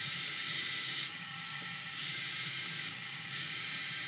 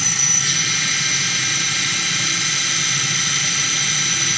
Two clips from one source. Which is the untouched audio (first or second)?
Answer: second